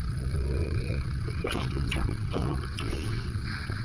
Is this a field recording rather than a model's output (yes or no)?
no